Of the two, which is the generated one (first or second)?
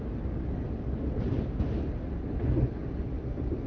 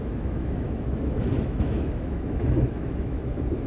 second